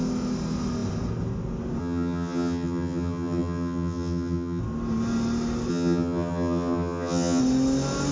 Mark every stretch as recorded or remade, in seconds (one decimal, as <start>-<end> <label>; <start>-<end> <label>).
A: 0.0-1.8 recorded; 1.8-4.6 remade; 4.6-5.7 recorded; 5.7-7.4 remade; 7.4-8.1 recorded